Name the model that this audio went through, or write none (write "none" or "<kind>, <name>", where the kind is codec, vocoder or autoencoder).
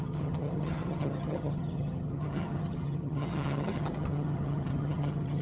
vocoder, HiFi-GAN